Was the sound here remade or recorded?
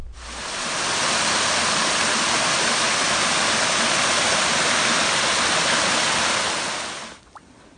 recorded